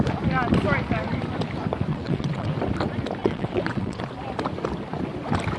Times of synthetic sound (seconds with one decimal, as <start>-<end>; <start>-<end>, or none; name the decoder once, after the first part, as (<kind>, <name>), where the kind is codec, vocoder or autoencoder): 1.9-2.5 (vocoder, WaveNeXt); 3.2-4.0